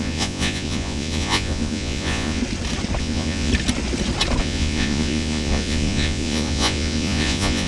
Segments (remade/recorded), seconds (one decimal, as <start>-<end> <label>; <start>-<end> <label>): 0.0-2.4 remade; 2.4-3.0 recorded; 3.0-3.5 remade; 3.5-4.4 recorded; 4.4-7.7 remade